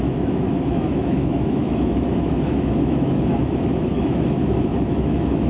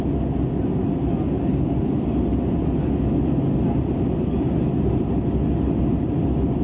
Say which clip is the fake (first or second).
first